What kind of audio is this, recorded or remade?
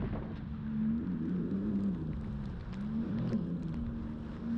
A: recorded